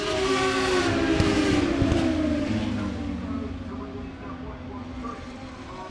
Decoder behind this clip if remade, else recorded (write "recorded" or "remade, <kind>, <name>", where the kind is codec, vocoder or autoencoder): recorded